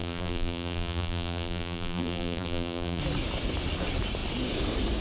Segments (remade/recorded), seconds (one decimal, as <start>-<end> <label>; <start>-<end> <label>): 0.0-3.0 remade; 3.0-5.0 recorded